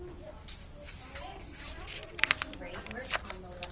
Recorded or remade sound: recorded